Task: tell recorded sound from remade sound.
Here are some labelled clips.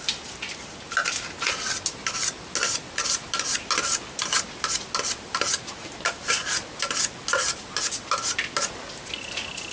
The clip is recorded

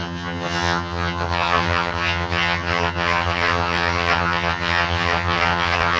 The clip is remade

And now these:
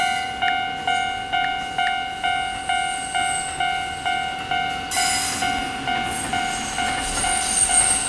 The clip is recorded